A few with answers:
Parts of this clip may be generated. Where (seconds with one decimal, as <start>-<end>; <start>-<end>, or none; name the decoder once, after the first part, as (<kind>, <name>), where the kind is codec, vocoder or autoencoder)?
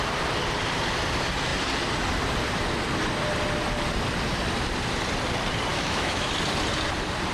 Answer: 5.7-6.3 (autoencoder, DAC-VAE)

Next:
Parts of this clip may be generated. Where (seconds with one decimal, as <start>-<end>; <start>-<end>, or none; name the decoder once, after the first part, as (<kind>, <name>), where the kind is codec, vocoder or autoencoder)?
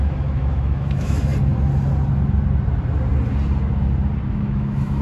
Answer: 0.0-1.3 (autoencoder, DAC-VAE); 4.3-5.0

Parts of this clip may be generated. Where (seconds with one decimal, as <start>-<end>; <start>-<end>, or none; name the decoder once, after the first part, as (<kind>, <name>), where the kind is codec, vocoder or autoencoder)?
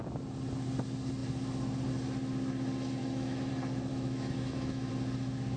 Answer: 3.0-3.5 (autoencoder, DAC-VAE); 3.9-4.9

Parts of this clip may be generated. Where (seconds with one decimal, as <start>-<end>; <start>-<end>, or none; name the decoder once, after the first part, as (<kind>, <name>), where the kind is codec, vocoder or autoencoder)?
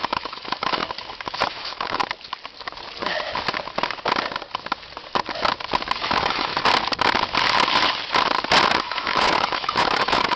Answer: 0.0-0.8 (autoencoder, DAC-VAE); 1.5-2.0; 6.0-6.5; 8.8-10.4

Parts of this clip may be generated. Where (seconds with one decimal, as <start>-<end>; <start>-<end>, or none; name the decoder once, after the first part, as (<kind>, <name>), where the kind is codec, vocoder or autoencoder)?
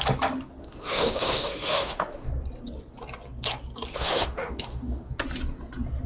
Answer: 0.6-2.3 (autoencoder, DAC-VAE); 3.9-5.1